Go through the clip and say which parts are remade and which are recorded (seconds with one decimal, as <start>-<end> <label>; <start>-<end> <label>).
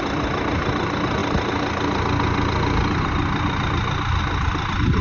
0.0-5.0 recorded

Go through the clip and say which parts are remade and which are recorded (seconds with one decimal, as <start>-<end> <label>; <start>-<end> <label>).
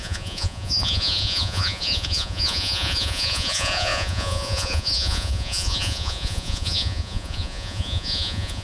0.0-8.6 remade